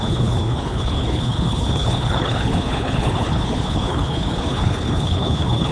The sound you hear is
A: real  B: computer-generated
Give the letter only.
B